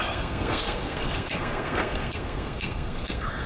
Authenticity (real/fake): fake